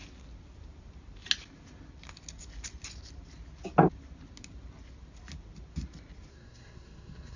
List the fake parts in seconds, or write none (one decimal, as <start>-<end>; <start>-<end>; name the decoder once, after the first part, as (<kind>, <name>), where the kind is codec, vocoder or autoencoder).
6.3-7.4 (codec, SNAC)